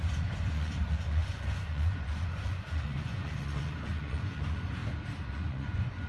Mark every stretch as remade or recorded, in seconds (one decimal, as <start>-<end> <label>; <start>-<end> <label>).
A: 0.0-4.8 remade; 4.8-5.3 recorded; 5.3-6.1 remade